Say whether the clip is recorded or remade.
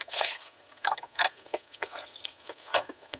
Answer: remade